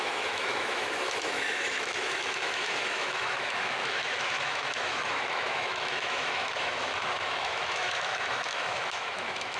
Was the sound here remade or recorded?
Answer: remade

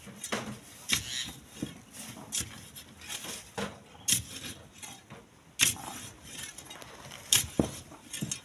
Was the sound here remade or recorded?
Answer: recorded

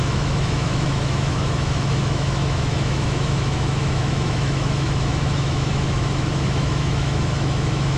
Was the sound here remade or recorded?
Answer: remade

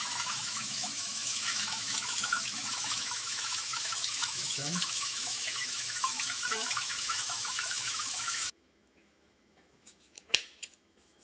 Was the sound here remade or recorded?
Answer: remade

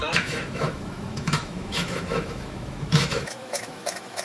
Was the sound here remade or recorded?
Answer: remade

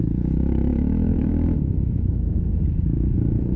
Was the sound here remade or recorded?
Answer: remade